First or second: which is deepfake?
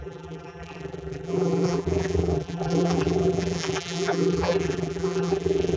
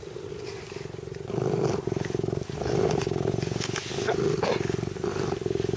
first